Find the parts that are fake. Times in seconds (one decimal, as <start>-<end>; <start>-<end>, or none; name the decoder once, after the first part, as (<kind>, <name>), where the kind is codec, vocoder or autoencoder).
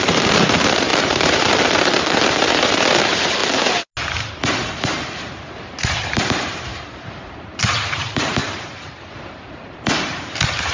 0.0-3.4 (vocoder, BigVGAN v2); 4.8-8.4; 9.1-10.7